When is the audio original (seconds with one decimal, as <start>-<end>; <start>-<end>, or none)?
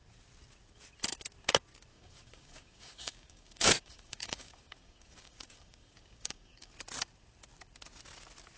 0.0-1.9; 6.7-8.6